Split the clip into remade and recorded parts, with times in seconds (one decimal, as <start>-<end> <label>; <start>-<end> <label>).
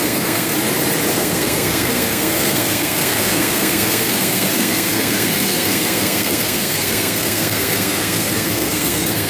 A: 0.0-0.5 remade; 0.5-1.1 recorded; 1.1-9.3 remade